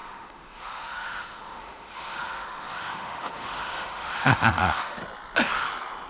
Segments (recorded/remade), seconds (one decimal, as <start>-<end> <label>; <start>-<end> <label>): 0.0-5.0 remade; 5.0-6.1 recorded